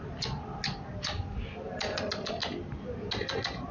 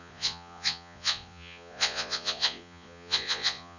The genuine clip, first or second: first